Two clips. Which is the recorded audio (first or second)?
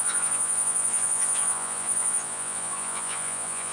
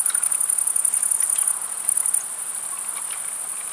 second